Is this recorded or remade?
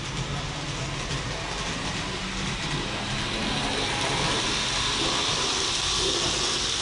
recorded